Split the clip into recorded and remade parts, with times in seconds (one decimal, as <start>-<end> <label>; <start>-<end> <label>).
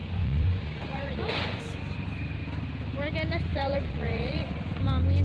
0.0-1.6 remade; 1.6-3.5 recorded; 3.5-4.8 remade; 4.8-5.2 recorded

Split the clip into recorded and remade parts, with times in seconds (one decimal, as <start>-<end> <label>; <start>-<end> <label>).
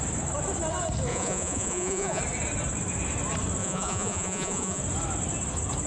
0.0-1.1 recorded; 1.1-2.2 remade; 2.2-3.6 recorded; 3.6-4.8 remade; 4.8-5.9 recorded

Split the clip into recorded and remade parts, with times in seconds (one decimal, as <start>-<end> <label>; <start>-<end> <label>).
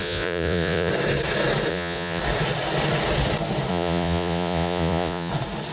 0.0-0.9 remade; 0.9-1.7 recorded; 1.7-2.2 remade; 2.2-3.7 recorded; 3.7-5.3 remade; 5.3-5.7 recorded